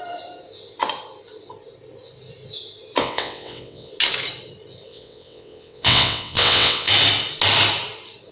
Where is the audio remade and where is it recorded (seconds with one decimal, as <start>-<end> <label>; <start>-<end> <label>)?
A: 0.0-3.0 recorded; 3.0-3.9 remade; 3.9-4.9 recorded; 4.9-6.9 remade; 6.9-8.3 recorded